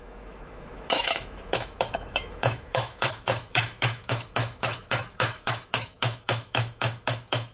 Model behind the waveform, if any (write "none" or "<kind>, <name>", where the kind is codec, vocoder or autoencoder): autoencoder, DAC-VAE